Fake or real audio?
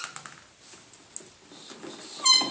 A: real